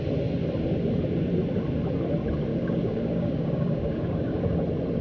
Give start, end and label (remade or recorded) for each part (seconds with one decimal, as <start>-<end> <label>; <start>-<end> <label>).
0.0-2.5 recorded; 2.5-4.4 remade; 4.4-5.0 recorded